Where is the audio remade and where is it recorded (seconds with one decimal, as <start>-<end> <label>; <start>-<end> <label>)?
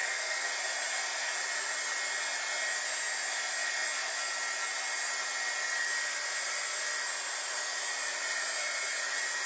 0.0-0.5 remade; 0.5-9.5 recorded